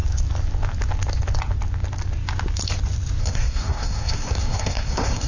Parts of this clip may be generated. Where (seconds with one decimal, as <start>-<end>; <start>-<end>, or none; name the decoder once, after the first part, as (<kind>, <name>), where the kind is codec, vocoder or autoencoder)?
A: 3.2-5.3 (codec, SNAC)

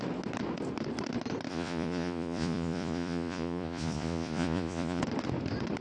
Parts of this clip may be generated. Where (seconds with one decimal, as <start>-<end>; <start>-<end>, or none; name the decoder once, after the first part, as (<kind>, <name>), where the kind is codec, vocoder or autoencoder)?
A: 1.5-5.0 (vocoder, Vocos)

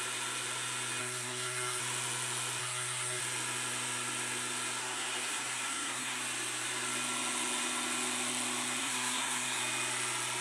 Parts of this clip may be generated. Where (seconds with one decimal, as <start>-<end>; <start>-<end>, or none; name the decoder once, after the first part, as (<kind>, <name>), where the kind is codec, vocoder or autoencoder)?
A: 1.0-1.8 (codec, SNAC); 2.6-3.2; 4.8-6.2; 8.8-9.6

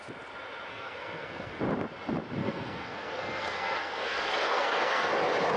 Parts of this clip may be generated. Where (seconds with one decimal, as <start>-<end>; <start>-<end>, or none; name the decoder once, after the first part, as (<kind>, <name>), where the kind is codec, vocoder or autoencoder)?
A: 0.7-1.6 (codec, SNAC); 2.4-5.1